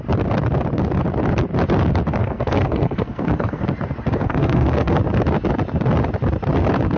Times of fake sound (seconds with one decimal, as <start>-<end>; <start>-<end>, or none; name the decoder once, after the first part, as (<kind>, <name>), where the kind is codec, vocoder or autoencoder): 2.2-3.7 (codec, SNAC); 4.2-5.0